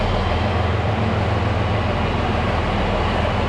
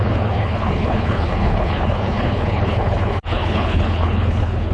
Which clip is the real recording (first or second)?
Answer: first